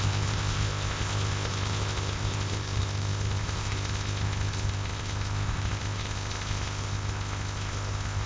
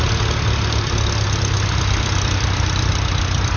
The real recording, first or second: second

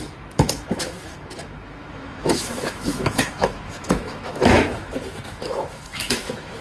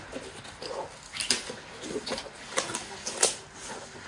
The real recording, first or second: second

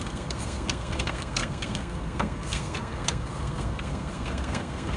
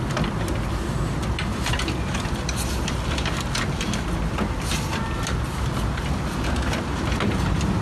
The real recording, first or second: second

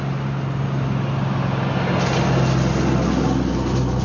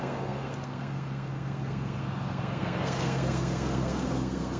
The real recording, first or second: first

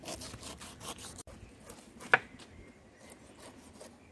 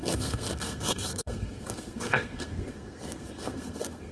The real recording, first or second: first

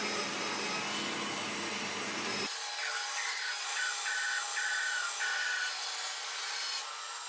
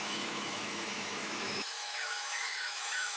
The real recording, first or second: first